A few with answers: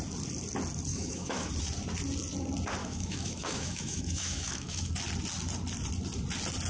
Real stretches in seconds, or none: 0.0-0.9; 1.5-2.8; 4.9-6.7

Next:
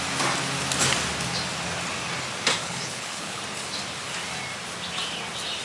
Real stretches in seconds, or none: 0.0-2.6; 3.4-5.6

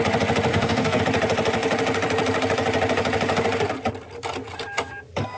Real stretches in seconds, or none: 0.0-0.5; 1.0-5.4

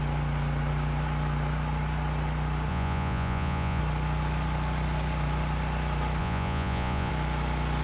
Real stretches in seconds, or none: 0.0-2.7; 3.8-6.2; 7.1-7.8

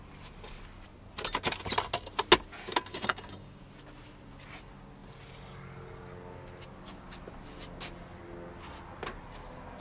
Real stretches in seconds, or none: 0.0-2.9; 3.6-9.8